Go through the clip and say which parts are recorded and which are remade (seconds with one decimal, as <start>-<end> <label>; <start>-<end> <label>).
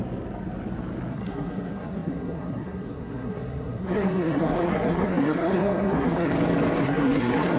0.0-1.1 recorded; 1.1-6.3 remade; 6.3-6.8 recorded; 6.8-7.6 remade